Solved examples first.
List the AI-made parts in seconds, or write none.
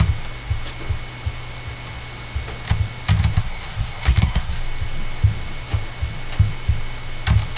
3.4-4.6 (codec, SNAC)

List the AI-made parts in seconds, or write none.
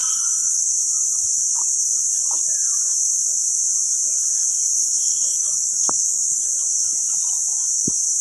0.0-0.7 (codec, DAC); 4.7-6.5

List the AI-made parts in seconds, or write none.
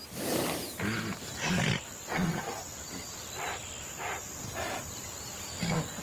none